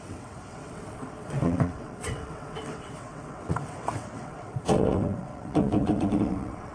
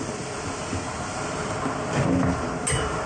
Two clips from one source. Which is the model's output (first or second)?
first